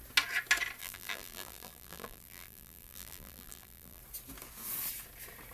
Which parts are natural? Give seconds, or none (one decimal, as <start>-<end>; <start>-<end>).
0.0-0.8; 4.0-5.5